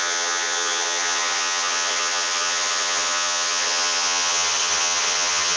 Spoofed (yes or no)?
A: yes